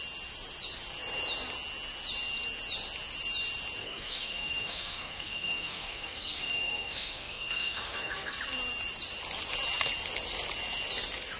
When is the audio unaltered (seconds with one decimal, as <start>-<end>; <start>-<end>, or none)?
0.0-3.8; 8.3-11.4